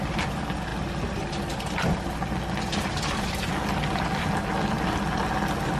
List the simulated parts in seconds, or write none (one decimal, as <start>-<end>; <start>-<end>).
none